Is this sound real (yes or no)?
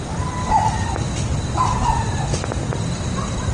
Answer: yes